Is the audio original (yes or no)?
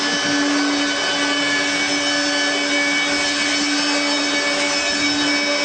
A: yes